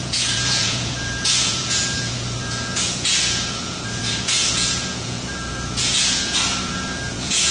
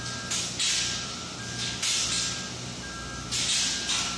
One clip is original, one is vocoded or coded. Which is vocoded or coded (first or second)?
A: first